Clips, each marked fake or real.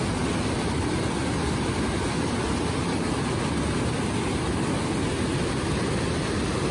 real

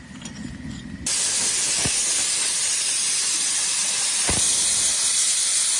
real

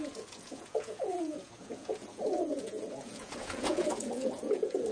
fake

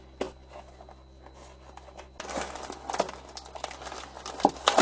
real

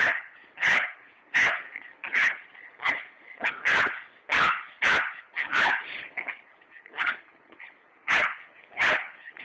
fake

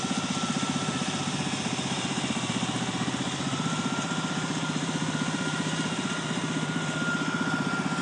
fake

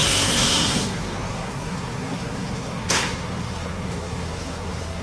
fake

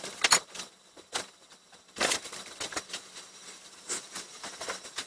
real